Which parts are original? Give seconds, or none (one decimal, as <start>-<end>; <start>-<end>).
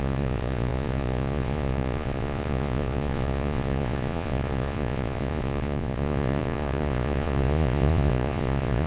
none